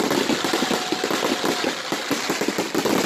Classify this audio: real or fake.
real